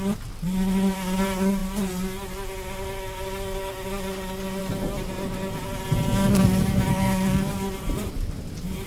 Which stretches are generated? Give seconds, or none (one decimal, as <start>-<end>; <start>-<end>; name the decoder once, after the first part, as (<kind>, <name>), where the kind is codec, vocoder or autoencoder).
6.9-7.5 (codec, SNAC)